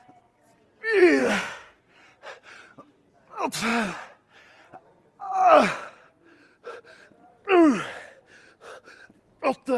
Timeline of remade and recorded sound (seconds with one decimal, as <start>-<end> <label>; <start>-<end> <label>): 0.0-1.2 recorded; 1.2-1.8 remade; 1.8-9.8 recorded